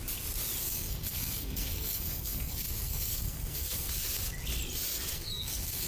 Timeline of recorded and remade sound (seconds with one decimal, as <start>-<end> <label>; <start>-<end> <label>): 0.0-0.6 recorded; 0.6-3.9 remade; 3.9-5.1 recorded; 5.1-5.9 remade